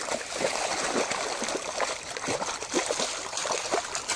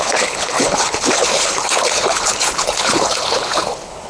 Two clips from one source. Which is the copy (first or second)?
second